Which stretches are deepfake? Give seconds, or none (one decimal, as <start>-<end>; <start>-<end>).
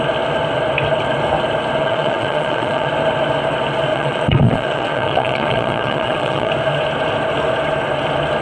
1.8-2.9; 3.9-6.5